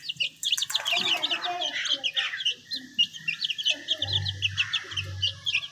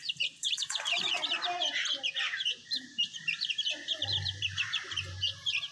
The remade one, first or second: second